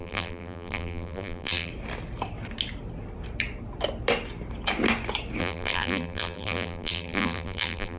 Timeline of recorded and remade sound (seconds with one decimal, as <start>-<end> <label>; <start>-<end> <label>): 0.0-1.7 remade; 1.7-5.4 recorded; 5.4-8.0 remade